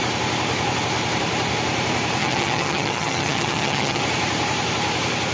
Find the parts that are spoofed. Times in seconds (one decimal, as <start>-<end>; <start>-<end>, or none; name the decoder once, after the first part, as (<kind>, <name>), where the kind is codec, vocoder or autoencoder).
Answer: 2.2-4.0 (vocoder, HiFi-GAN)